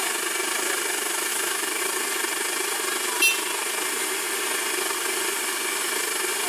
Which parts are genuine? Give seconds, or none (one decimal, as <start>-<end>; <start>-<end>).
0.0-1.3; 1.8-6.5

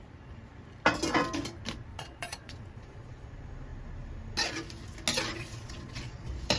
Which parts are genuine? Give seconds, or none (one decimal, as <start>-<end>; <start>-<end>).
0.0-1.9; 3.3-5.3

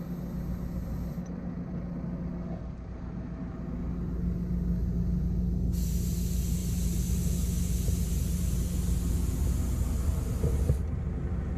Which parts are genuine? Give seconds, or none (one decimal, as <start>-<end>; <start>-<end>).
0.0-11.6